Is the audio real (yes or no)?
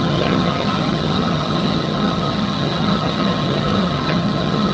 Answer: no